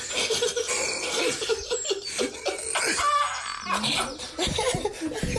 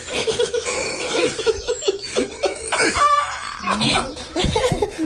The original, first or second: first